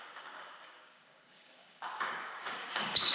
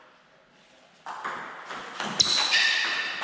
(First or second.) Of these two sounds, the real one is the second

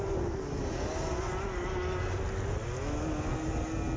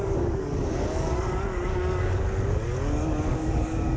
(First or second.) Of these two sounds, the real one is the first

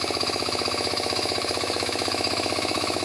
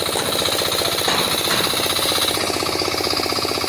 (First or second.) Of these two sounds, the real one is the second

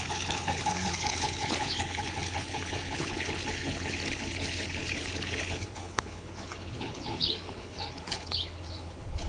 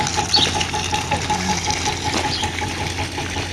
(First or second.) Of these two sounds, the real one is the second